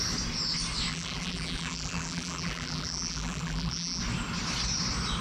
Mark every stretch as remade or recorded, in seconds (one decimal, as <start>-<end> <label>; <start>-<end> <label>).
0.0-0.9 recorded; 0.9-4.0 remade; 4.0-5.2 recorded